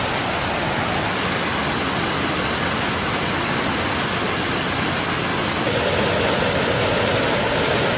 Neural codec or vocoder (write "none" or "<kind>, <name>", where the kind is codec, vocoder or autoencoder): none